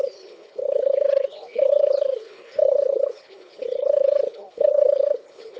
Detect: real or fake fake